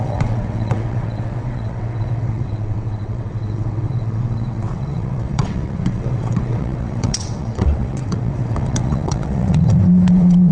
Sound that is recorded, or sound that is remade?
remade